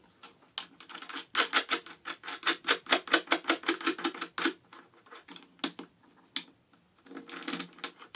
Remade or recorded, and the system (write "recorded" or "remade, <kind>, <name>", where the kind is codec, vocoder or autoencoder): recorded